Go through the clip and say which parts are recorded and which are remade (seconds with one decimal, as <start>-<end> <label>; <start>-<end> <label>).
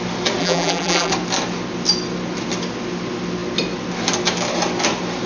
0.0-0.4 recorded; 0.4-1.1 remade; 1.1-5.3 recorded